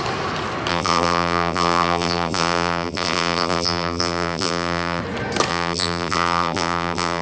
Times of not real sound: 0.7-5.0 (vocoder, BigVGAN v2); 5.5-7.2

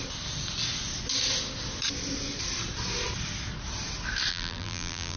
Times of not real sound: 4.3-5.2 (vocoder, BigVGAN v2)

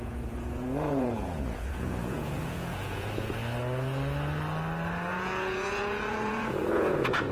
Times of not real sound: 0.0-3.4 (vocoder, Vocos); 5.1-7.3

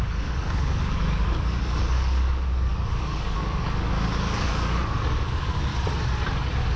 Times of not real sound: 0.0-5.7 (codec, DAC)